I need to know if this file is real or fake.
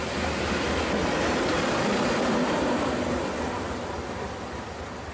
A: real